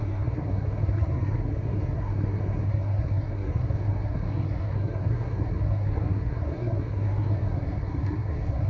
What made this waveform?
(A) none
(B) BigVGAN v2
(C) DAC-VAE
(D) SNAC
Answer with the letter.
D